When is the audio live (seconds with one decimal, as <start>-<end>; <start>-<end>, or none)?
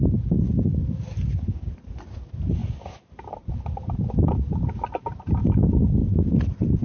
0.0-6.0